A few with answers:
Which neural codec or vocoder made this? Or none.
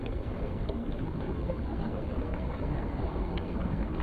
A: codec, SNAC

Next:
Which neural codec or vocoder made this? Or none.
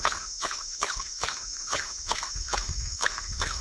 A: autoencoder, DAC-VAE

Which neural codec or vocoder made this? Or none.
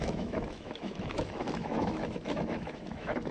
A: autoencoder, DAC-VAE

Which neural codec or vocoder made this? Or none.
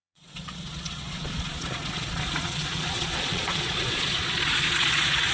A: vocoder, Vocos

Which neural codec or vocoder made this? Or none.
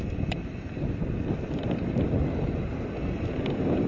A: none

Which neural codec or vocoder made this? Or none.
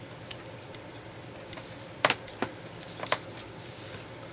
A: none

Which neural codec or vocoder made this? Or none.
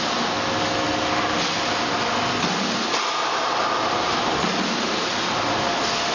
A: none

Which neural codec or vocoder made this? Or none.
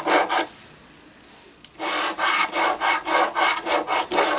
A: none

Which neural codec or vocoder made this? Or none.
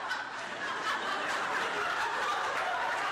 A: vocoder, BigVGAN v2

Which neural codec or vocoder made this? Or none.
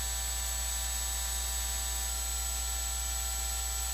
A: none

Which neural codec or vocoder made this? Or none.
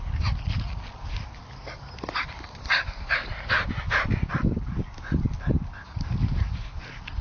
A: none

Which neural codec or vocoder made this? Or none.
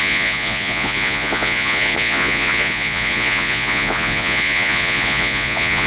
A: vocoder, Vocos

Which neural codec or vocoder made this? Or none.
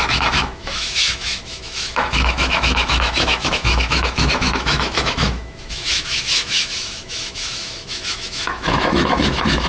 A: autoencoder, DAC-VAE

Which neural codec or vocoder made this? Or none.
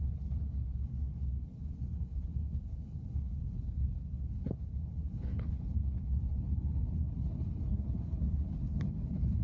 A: codec, HILCodec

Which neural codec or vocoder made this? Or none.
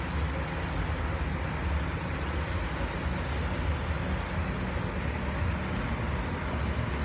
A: none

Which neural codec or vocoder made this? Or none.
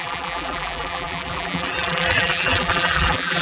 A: vocoder, BigVGAN v2